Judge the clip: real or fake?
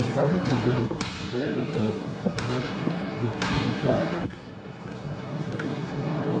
fake